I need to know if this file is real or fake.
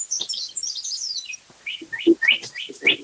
real